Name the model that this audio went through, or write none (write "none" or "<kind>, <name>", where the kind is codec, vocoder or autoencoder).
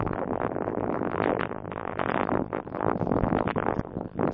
vocoder, BigVGAN v2